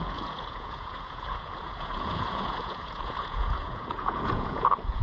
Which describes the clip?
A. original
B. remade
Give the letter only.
B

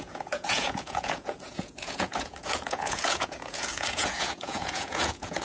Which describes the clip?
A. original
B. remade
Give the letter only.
B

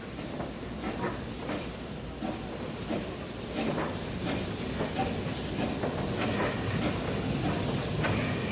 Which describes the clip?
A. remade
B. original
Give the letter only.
B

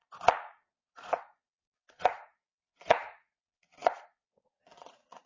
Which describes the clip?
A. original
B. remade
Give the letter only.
B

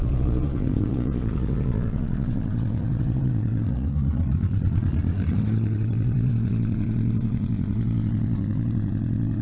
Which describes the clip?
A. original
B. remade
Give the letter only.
B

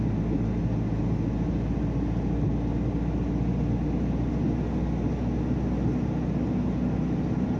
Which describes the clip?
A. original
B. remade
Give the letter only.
A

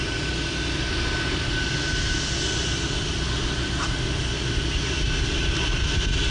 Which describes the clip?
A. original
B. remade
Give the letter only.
A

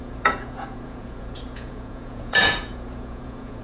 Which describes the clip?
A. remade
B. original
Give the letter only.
A